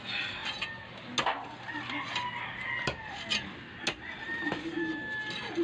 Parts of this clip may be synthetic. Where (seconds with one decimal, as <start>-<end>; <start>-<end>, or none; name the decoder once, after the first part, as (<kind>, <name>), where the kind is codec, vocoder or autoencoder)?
none